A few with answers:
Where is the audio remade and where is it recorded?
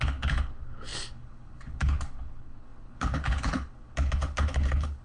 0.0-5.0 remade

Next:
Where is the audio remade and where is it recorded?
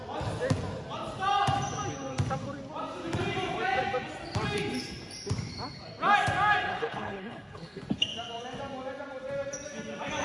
0.0-6.7 recorded; 6.7-7.8 remade; 7.8-10.2 recorded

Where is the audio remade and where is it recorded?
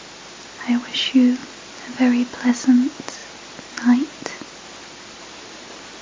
0.0-6.0 recorded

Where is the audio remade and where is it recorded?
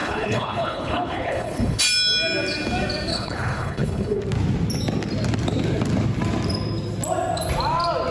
0.0-1.8 remade; 1.8-3.1 recorded; 3.1-4.2 remade; 4.2-8.1 recorded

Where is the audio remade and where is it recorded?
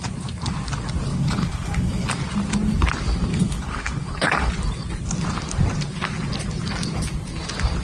0.0-1.1 recorded; 1.1-2.1 remade; 2.1-3.3 recorded; 3.3-4.5 remade; 4.5-7.8 recorded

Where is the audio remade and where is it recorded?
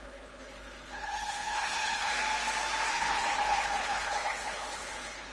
0.0-2.1 remade; 2.1-2.9 recorded; 2.9-5.3 remade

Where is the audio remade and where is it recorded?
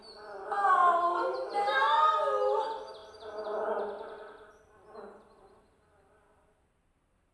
0.0-7.3 recorded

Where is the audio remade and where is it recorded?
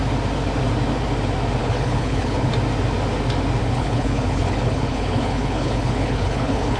0.0-1.6 recorded; 1.6-2.5 remade; 2.5-3.6 recorded; 3.6-6.8 remade